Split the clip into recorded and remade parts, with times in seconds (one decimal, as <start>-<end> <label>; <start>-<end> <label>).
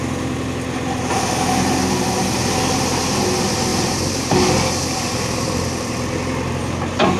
0.0-7.2 recorded